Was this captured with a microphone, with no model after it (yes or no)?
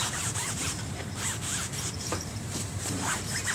no